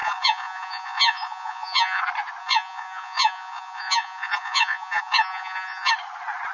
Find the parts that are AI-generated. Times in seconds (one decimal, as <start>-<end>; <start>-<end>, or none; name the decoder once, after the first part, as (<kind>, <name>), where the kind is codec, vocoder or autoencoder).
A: 0.0-2.0 (vocoder, Vocos); 2.4-5.9